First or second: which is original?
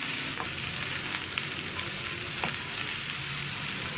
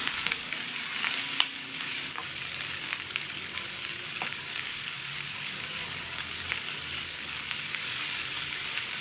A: first